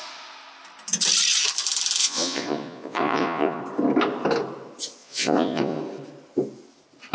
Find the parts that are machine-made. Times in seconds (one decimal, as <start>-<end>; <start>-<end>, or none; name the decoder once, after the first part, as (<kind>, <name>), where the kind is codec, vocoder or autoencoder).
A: 2.0-3.6 (vocoder, Vocos); 5.0-5.8